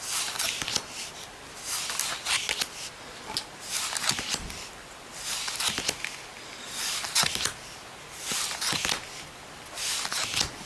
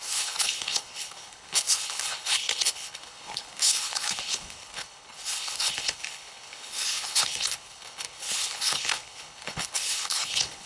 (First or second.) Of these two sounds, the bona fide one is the first